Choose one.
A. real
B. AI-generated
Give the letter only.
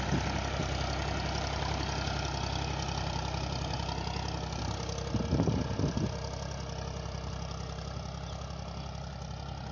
A